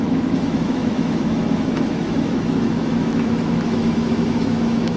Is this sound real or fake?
fake